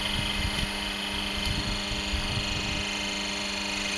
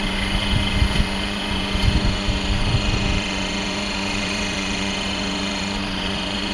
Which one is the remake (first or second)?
second